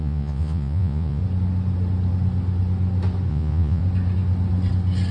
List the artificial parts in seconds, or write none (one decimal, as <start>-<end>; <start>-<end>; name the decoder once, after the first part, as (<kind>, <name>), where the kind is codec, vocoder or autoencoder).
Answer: 0.0-1.2 (vocoder, Vocos); 3.3-3.8